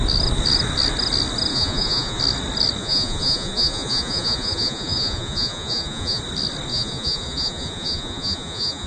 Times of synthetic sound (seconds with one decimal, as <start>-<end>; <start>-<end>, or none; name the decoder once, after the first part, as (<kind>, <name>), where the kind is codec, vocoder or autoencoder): 1.5-2.2 (vocoder, Vocos); 2.8-6.2; 6.7-8.9